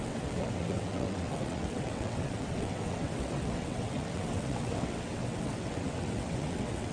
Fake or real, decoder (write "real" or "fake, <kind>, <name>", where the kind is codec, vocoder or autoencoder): fake, vocoder, WaveNeXt